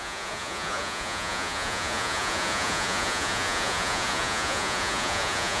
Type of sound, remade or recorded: remade